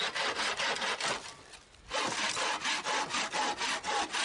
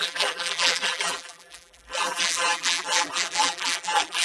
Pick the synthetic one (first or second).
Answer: second